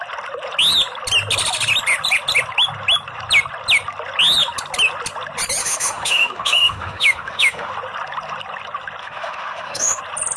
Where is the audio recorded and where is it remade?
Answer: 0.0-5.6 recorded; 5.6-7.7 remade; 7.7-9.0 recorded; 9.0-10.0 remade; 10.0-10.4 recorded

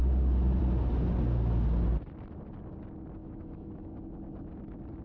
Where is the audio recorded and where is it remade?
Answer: 0.0-3.2 recorded; 3.2-3.9 remade; 3.9-5.0 recorded

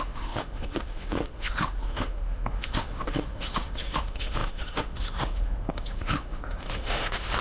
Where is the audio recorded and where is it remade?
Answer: 0.0-7.4 remade

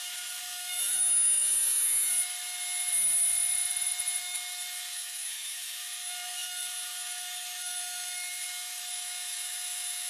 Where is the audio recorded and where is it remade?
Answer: 0.0-2.1 remade; 2.1-4.2 recorded; 4.2-10.1 remade